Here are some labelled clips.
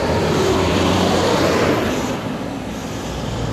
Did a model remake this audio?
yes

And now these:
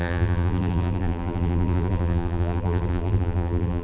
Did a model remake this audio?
yes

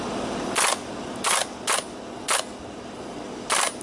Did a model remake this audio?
no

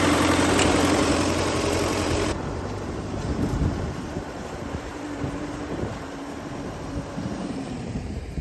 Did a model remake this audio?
yes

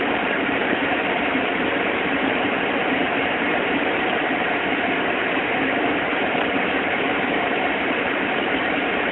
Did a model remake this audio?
yes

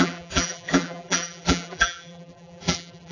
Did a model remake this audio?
yes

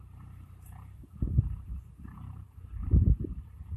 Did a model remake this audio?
yes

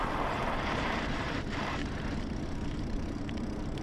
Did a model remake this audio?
yes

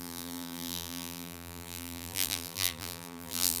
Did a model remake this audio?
yes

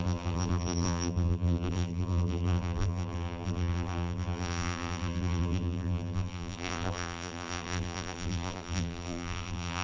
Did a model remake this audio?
yes